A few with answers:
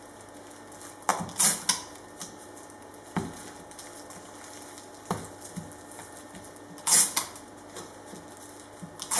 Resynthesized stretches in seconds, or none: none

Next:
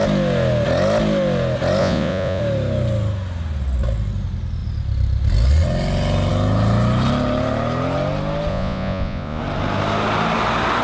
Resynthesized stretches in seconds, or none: 1.8-2.4 (vocoder, Vocos); 8.5-9.4

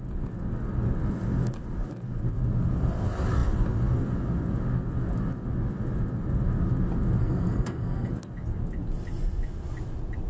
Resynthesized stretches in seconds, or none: 7.2-8.1 (codec, SNAC)

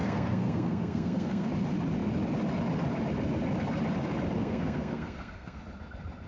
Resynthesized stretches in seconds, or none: 0.0-1.5 (codec, SNAC); 4.4-5.6

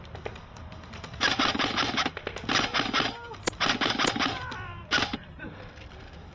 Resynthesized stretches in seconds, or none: 0.0-2.7 (vocoder, BigVGAN v2); 3.4-6.3

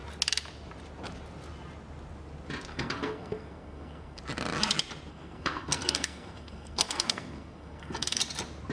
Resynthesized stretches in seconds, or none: 2.7-4.2 (codec, SNAC); 5.1-8.2